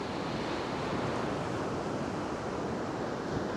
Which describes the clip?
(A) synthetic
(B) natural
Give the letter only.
B